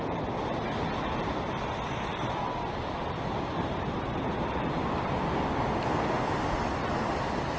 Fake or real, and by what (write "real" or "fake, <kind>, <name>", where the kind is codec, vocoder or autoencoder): real